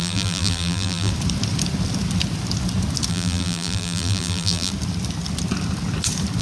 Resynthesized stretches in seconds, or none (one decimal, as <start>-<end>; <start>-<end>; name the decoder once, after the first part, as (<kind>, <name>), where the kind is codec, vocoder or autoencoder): 0.0-1.1 (vocoder, BigVGAN v2); 3.1-4.7